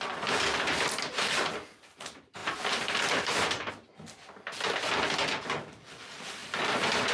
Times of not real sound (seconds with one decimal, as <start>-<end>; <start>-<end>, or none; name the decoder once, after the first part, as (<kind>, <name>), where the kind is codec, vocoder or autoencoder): 2.4-3.7 (vocoder, BigVGAN v2)

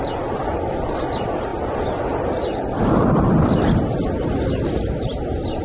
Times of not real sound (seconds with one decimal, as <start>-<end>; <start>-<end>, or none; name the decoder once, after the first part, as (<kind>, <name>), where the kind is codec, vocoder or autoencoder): 0.0-1.5 (vocoder, BigVGAN v2); 4.9-5.6

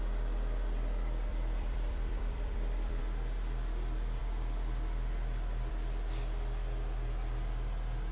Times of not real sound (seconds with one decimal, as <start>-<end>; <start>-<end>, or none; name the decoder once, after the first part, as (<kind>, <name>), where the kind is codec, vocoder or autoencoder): 1.3-3.0 (vocoder, BigVGAN v2)

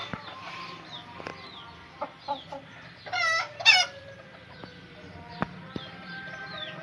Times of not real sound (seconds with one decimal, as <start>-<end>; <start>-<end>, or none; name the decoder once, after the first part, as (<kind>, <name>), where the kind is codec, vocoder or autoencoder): 0.0-1.3 (vocoder, BigVGAN v2); 4.9-6.8

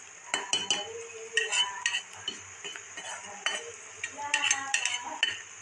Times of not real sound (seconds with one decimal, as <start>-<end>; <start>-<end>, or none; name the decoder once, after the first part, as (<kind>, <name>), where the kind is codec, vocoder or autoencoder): none